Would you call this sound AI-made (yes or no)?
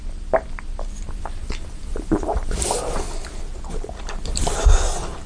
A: no